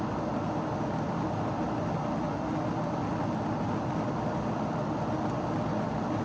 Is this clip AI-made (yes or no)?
no